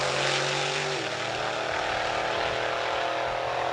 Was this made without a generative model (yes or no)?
yes